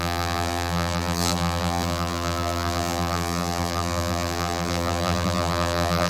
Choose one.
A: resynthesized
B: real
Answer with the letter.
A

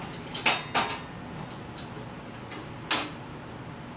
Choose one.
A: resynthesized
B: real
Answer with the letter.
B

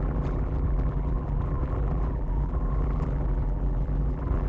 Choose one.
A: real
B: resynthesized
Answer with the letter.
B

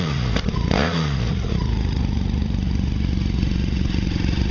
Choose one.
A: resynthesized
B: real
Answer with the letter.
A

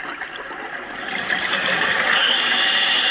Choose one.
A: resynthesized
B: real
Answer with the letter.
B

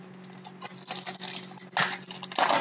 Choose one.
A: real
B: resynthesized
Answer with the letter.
A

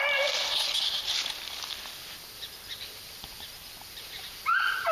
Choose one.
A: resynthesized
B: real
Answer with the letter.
A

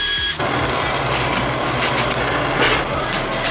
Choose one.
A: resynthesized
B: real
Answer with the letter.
B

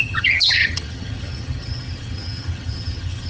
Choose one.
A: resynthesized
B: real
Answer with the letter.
A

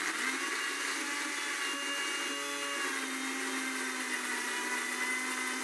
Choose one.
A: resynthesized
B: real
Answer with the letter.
B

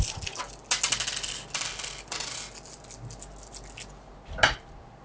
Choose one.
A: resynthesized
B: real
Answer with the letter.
B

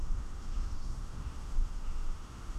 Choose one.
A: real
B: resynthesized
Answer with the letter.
B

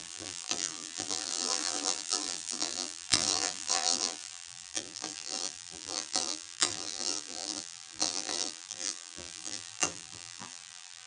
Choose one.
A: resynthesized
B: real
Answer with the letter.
A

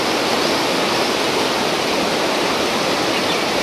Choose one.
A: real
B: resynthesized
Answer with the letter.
A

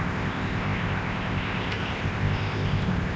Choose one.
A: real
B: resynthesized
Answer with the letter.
B